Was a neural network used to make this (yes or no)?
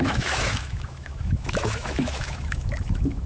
yes